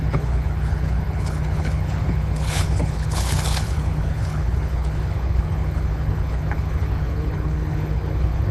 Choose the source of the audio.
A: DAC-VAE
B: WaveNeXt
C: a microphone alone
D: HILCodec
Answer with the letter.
D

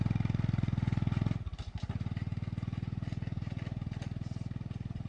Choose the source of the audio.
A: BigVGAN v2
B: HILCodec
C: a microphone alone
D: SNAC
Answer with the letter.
C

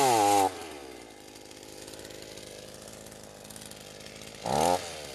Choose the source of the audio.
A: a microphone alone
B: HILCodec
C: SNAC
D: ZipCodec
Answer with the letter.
A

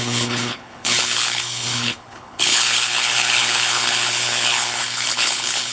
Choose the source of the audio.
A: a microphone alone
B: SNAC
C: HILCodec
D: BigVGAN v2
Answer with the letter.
C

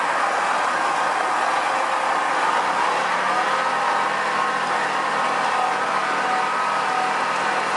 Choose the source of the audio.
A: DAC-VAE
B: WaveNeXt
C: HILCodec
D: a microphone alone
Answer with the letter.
D